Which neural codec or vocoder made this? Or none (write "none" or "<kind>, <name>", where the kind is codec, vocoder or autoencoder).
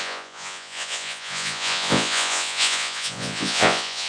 vocoder, Vocos